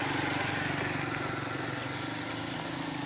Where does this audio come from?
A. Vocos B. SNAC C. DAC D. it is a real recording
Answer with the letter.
D